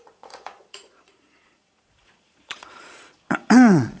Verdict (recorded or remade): remade